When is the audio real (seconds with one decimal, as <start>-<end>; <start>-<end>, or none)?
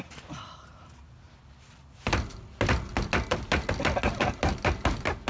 0.0-5.3